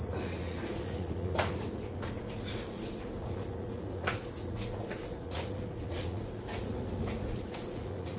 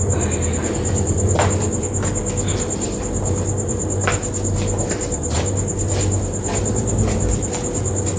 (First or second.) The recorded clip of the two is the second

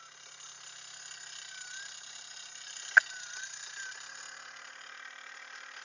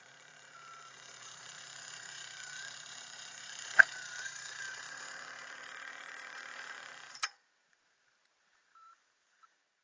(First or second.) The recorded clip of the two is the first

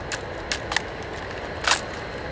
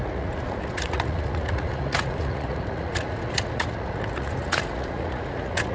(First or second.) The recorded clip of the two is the first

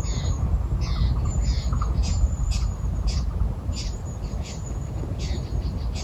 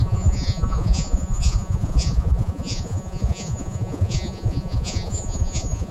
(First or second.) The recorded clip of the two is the first